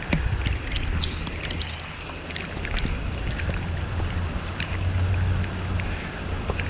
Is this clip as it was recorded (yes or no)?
yes